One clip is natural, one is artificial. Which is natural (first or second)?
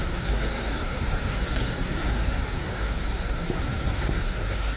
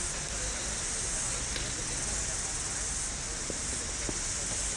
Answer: second